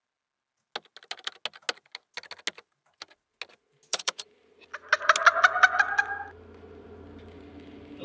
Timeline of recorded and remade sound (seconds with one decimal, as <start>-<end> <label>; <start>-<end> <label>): 0.0-3.9 recorded; 3.9-4.5 remade; 4.5-8.0 recorded

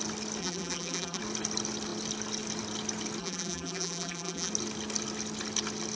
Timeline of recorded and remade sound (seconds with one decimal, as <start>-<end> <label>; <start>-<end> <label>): 0.0-0.4 recorded; 0.4-1.2 remade; 1.2-3.2 recorded; 3.2-4.5 remade; 4.5-6.0 recorded